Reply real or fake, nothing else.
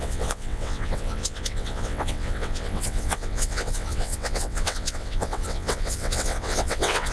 fake